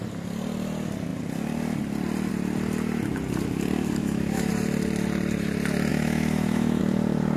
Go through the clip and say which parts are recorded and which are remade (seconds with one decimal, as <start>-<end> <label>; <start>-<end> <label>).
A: 0.0-4.0 recorded; 4.0-4.5 remade; 4.5-5.9 recorded; 5.9-6.8 remade; 6.8-7.4 recorded